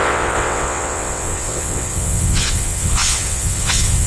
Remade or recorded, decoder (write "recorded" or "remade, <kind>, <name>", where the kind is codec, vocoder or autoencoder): remade, vocoder, WaveNeXt